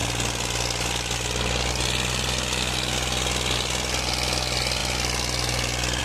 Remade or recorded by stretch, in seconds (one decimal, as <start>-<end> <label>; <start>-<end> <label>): 0.0-6.0 recorded